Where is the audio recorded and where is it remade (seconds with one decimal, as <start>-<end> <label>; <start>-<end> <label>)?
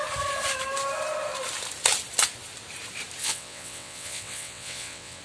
0.0-3.2 recorded; 3.2-5.2 remade